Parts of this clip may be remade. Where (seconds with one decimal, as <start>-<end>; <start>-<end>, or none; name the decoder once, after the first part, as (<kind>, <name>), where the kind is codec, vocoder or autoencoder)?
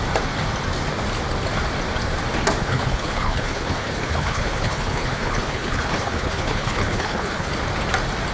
2.6-7.5 (codec, HILCodec)